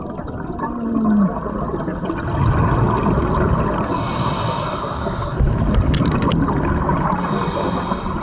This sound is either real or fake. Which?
real